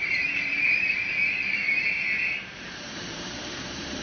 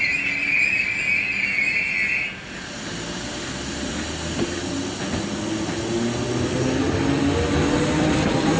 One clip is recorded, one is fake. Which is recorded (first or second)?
second